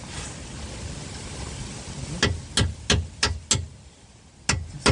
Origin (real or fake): real